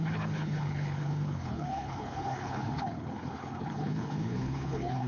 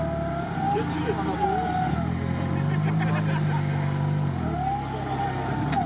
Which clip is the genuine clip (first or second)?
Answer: second